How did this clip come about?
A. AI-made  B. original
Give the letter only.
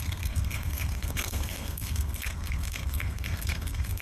A